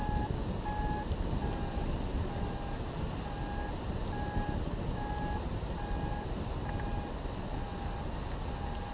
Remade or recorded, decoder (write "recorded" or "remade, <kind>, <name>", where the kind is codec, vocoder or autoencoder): recorded